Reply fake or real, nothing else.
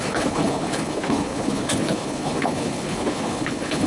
fake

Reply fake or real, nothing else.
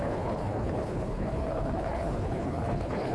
fake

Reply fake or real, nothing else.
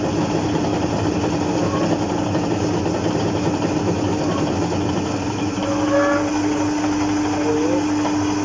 real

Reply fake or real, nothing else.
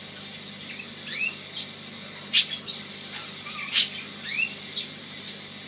real